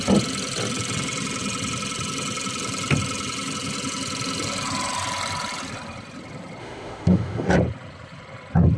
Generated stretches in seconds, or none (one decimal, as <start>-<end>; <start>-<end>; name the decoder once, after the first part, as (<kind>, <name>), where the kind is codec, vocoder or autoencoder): 6.6-7.5 (autoencoder, DAC-VAE)